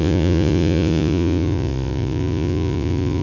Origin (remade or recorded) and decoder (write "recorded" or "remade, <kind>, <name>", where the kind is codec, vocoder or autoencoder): remade, vocoder, Vocos